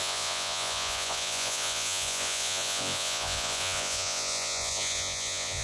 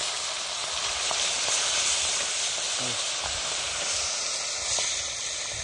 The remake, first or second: first